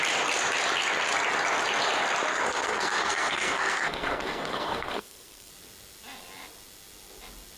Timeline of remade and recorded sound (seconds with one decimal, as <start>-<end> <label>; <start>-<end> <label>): 0.0-2.3 recorded; 2.3-5.5 remade; 5.5-7.6 recorded